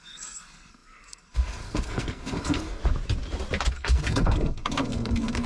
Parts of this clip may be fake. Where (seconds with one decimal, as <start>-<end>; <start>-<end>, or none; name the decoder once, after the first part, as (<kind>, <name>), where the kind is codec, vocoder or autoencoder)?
0.0-2.8 (codec, SNAC); 3.7-5.5